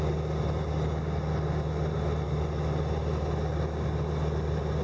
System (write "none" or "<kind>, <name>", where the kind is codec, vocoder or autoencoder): none